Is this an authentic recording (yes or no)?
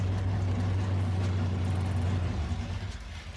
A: yes